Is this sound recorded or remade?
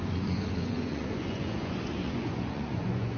remade